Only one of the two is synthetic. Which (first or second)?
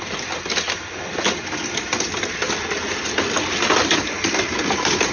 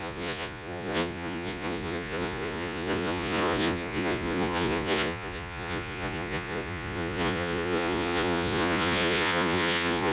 second